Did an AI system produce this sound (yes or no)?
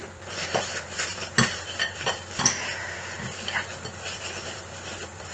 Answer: yes